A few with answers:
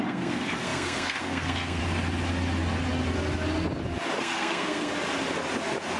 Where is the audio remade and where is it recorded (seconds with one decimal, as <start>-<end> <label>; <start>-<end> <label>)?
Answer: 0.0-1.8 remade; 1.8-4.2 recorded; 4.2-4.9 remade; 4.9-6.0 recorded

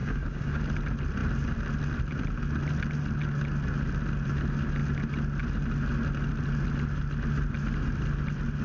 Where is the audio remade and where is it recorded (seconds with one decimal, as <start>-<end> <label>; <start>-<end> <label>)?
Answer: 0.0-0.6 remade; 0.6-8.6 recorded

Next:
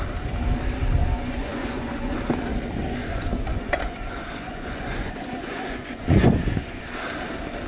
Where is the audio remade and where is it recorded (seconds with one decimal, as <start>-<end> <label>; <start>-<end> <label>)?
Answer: 0.0-1.0 recorded; 1.0-2.2 remade; 2.2-3.0 recorded; 3.0-6.8 remade; 6.8-7.7 recorded

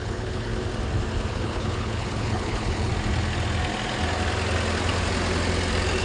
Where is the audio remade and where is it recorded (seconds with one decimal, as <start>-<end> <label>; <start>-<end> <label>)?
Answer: 0.0-0.5 remade; 0.5-1.3 recorded; 1.3-2.9 remade; 2.9-6.0 recorded

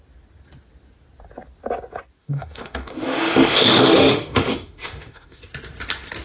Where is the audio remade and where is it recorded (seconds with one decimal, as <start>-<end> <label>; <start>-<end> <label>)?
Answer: 0.0-2.2 recorded; 2.2-5.4 remade; 5.4-6.2 recorded

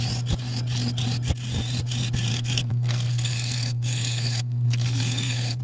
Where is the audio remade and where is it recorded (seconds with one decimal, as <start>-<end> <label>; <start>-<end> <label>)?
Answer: 0.0-2.3 recorded; 2.3-5.6 remade

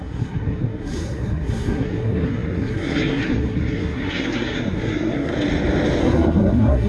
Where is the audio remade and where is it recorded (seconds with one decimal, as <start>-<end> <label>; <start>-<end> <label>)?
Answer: 0.0-5.3 remade; 5.3-6.0 recorded; 6.0-6.9 remade

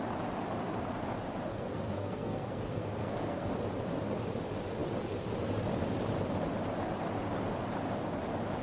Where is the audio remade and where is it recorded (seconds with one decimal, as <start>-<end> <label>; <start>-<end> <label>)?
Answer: 0.0-1.5 recorded; 1.5-3.5 remade; 3.5-8.6 recorded